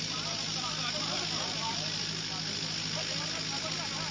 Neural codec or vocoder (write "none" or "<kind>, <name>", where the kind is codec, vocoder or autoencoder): none